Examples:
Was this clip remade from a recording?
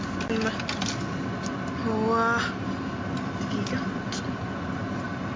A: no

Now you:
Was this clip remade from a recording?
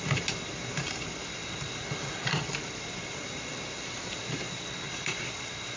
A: no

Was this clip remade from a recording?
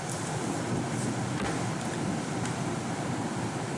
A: no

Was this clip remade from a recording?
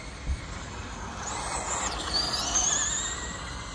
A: no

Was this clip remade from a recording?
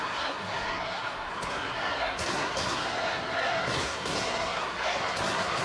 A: yes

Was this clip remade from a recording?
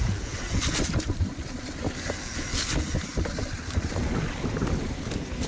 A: no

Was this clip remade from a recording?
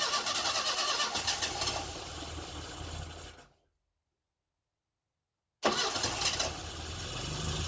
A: no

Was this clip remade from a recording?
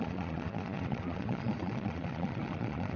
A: yes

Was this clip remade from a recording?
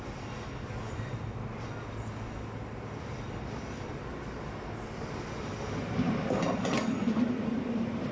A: no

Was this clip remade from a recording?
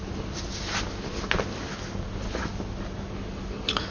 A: no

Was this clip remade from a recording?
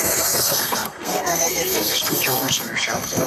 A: yes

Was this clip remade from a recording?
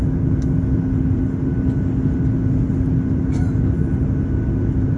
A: no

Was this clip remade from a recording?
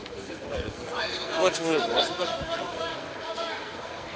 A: yes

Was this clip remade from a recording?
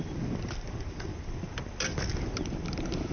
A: yes